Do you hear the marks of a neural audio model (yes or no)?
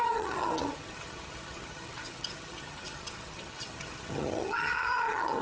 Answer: yes